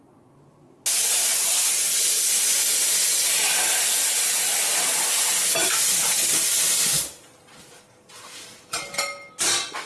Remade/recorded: recorded